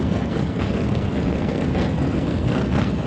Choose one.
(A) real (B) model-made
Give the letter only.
B